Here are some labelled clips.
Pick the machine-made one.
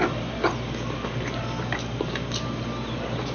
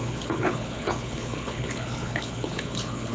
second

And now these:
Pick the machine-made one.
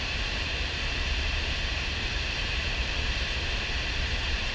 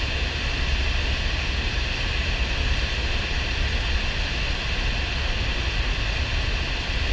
first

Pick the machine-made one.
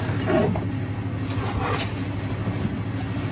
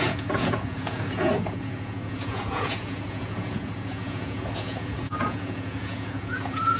second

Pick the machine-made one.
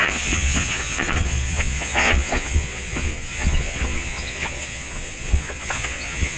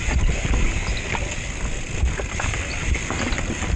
first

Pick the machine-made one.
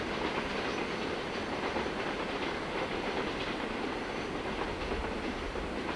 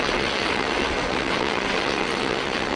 second